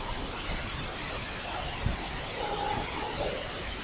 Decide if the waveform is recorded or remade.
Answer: recorded